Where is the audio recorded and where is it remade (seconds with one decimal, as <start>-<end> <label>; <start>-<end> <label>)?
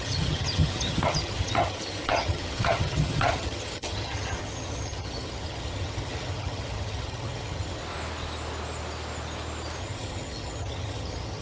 0.0-7.8 remade; 7.8-9.8 recorded; 9.8-11.4 remade